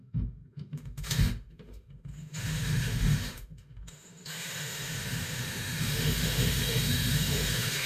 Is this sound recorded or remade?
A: remade